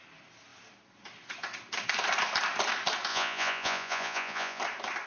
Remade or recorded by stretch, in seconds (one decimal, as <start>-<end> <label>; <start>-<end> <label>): 0.0-3.1 recorded; 3.1-4.6 remade; 4.6-5.1 recorded